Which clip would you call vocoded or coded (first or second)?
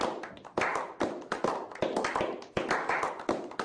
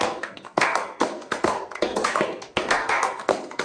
second